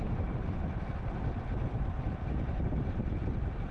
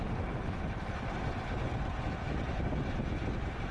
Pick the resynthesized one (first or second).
first